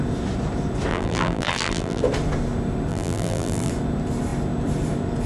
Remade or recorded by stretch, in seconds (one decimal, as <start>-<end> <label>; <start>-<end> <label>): 0.0-0.9 recorded; 0.9-2.0 remade; 2.0-2.9 recorded; 2.9-3.7 remade; 3.7-5.3 recorded